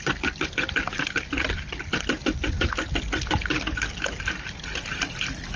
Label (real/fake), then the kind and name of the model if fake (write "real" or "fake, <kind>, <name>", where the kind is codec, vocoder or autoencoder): real